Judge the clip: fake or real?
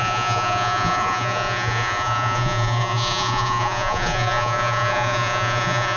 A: fake